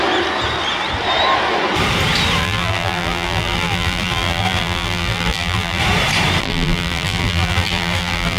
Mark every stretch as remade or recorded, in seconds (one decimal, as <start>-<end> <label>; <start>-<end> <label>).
0.0-2.4 recorded; 2.4-5.8 remade; 5.8-6.4 recorded; 6.4-8.4 remade